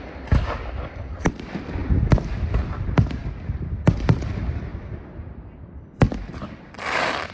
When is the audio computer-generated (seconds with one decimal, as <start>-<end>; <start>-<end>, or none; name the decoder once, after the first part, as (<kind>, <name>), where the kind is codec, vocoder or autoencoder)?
0.0-1.8 (vocoder, BigVGAN v2); 2.3-3.2; 4.0-4.7; 5.6-7.3